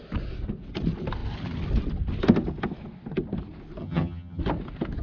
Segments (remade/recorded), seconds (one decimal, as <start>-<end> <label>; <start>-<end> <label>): 0.0-3.8 recorded; 3.8-4.4 remade; 4.4-5.0 recorded